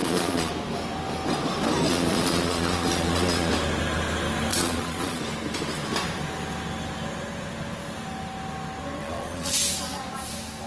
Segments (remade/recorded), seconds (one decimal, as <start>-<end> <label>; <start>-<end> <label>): 0.0-0.5 remade; 0.5-1.9 recorded; 1.9-3.5 remade; 3.5-4.5 recorded; 4.5-5.2 remade; 5.2-9.0 recorded; 9.0-9.6 remade; 9.6-10.7 recorded